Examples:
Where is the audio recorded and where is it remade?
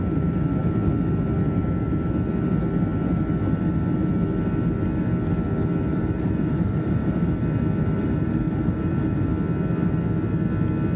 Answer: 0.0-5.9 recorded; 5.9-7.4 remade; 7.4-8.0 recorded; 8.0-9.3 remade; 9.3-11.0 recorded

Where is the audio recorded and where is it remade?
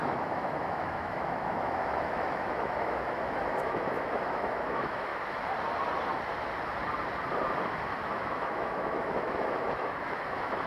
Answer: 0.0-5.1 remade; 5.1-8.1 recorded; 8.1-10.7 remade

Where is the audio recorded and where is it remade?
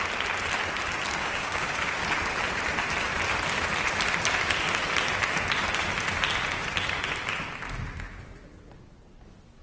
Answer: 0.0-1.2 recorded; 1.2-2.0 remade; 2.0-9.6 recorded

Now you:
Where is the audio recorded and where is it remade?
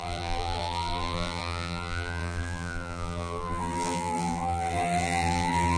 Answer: 0.0-5.8 remade